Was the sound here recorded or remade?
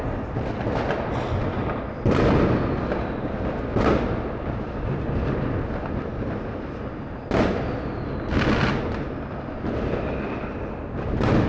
recorded